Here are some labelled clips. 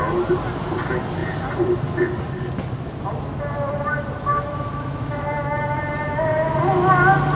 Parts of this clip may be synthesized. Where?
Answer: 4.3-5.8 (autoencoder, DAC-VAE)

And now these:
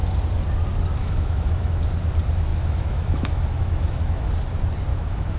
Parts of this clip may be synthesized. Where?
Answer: 1.0-1.8 (autoencoder, DAC-VAE); 2.5-4.3; 4.9-5.4

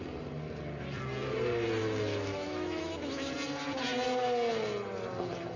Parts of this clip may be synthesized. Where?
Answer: 1.8-3.3 (autoencoder, DAC-VAE)

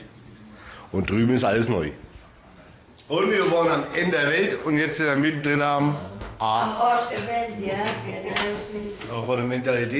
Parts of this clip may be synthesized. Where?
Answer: 4.6-7.1 (autoencoder, DAC-VAE); 8.4-9.6

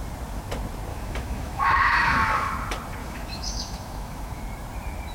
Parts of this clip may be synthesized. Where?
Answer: 0.9-2.5 (autoencoder, DAC-VAE); 3.0-4.4

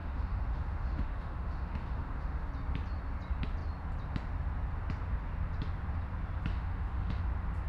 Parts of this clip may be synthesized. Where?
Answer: 0.0-2.5 (autoencoder, DAC-VAE); 6.5-7.2

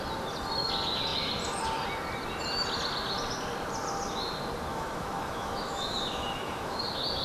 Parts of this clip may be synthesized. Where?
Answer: 4.7-6.8 (autoencoder, DAC-VAE)

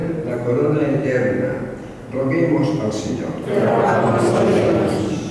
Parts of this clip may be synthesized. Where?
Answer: none